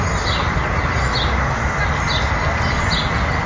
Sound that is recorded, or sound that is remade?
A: recorded